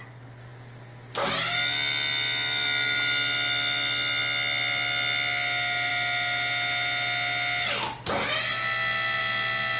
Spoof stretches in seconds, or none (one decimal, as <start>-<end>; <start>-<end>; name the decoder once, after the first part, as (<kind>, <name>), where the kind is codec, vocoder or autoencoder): none